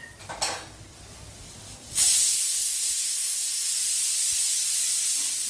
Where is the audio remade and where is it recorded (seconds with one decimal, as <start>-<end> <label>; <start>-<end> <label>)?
0.0-2.2 recorded; 2.2-3.7 remade; 3.7-5.5 recorded